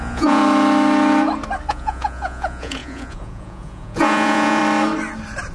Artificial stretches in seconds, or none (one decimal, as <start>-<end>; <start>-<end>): 0.0-0.4; 1.7-4.6